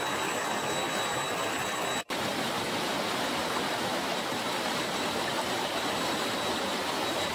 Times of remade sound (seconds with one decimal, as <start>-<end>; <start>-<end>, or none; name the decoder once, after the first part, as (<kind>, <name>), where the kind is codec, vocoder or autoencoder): 2.3-4.1 (vocoder, BigVGAN v2); 4.5-6.5